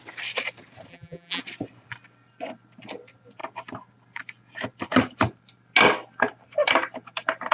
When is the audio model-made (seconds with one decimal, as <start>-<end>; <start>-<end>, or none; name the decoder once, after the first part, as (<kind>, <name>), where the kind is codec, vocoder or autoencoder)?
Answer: 0.9-1.4 (vocoder, BigVGAN v2)